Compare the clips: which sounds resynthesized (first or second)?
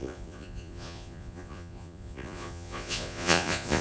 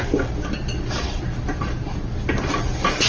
first